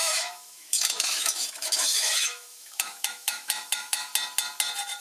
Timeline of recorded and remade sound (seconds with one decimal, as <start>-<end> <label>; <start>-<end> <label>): 0.0-4.1 remade; 4.1-5.0 recorded